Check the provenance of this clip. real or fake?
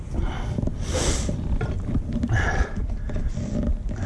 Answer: real